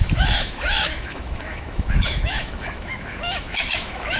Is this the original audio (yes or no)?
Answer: no